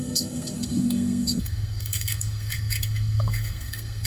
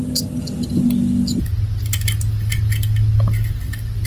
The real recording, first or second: second